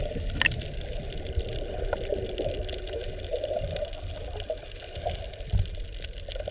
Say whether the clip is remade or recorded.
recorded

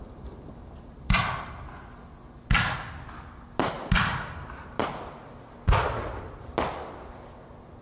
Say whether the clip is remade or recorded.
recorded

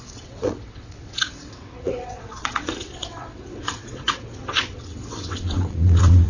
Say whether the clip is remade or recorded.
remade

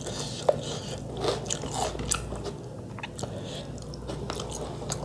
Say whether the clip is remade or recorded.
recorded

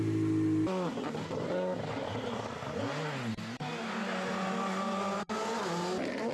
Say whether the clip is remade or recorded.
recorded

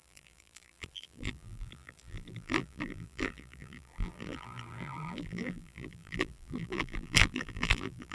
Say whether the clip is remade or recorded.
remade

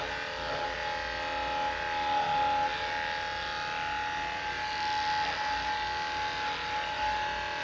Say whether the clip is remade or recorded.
recorded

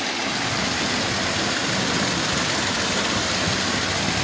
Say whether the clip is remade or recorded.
recorded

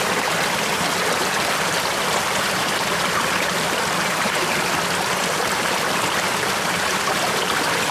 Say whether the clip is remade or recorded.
remade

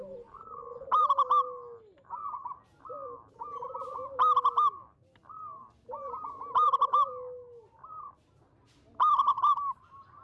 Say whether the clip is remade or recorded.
recorded